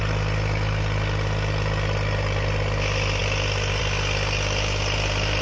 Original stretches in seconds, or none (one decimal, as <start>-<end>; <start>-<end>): 0.0-5.4